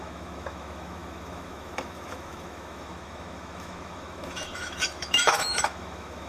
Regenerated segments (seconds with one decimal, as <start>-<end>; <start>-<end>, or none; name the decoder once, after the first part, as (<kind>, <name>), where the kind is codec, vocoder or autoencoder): 0.0-6.3 (autoencoder, DAC-VAE)